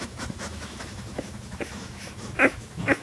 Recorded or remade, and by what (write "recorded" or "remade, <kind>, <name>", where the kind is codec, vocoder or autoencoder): remade, autoencoder, DAC-VAE